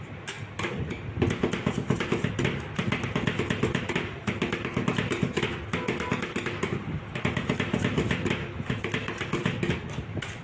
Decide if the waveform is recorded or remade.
recorded